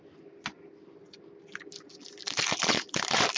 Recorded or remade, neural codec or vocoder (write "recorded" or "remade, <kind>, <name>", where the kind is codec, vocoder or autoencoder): recorded